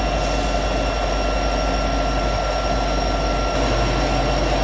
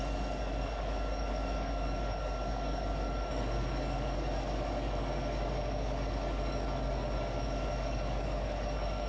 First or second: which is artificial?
second